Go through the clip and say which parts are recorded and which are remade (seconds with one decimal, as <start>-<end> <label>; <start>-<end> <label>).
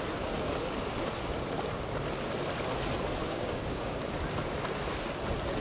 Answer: 0.0-3.2 recorded; 3.2-4.0 remade; 4.0-5.6 recorded